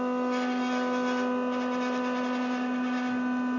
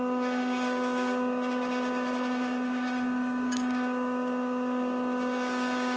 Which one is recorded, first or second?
first